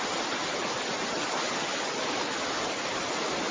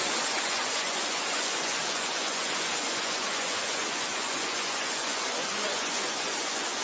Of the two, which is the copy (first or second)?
second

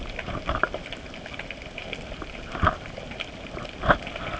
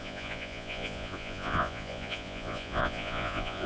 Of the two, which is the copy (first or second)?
second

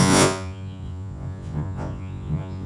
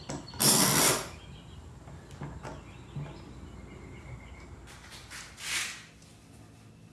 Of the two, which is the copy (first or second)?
first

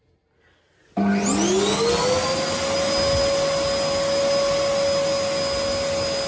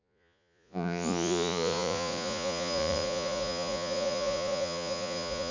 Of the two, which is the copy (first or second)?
second